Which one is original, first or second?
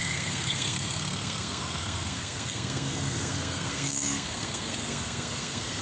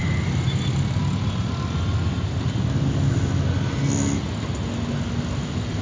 second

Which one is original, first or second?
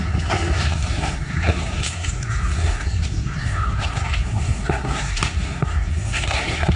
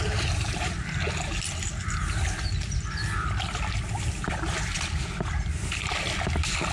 second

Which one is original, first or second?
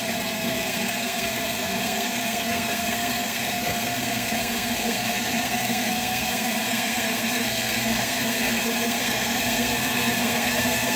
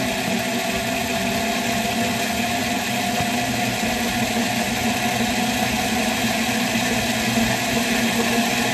second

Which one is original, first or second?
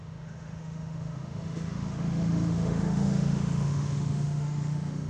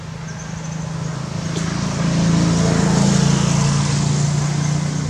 second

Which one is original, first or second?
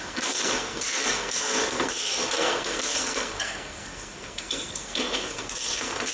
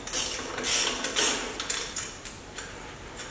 second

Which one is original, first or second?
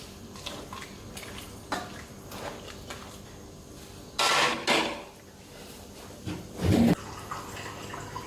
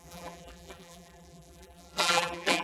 first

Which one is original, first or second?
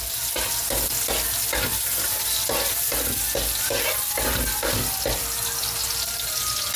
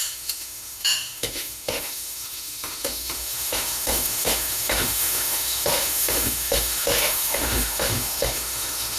first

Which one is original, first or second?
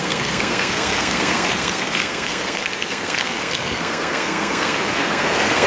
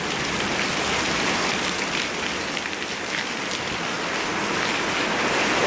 second